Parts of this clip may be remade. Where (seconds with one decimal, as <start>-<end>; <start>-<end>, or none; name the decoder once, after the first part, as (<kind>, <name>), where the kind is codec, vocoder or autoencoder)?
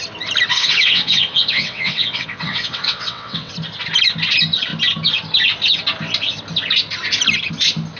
0.5-3.5 (vocoder, WaveNeXt)